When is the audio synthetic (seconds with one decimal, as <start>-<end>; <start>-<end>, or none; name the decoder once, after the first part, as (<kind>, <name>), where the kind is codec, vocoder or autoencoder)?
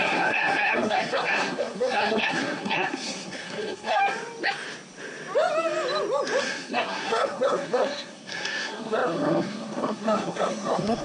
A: 0.0-4.0 (codec, SNAC); 6.4-11.0